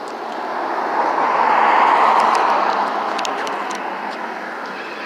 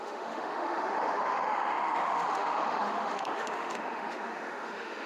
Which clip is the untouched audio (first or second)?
first